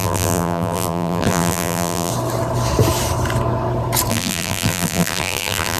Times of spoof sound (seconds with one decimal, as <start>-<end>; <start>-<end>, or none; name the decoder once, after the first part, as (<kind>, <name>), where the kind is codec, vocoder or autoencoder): 0.0-2.1 (vocoder, BigVGAN v2); 4.1-5.8